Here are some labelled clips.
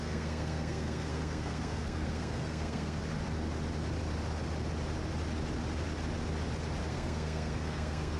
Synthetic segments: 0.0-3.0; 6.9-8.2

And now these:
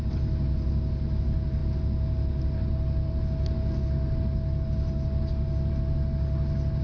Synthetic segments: none

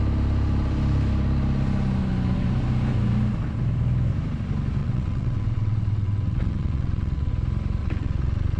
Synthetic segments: 4.8-7.3; 7.8-8.6

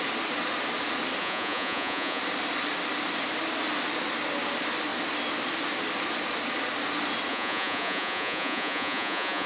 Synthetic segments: 1.2-2.2; 7.3-9.5

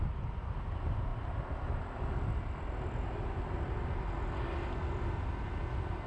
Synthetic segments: none

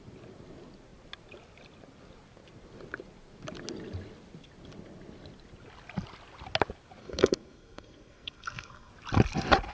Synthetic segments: 7.0-8.9

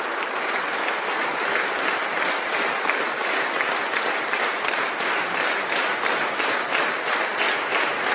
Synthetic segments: none

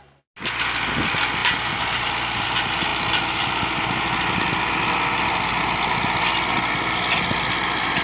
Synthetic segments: none